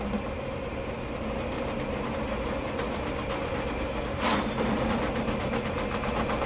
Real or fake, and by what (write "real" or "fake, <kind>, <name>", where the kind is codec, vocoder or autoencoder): real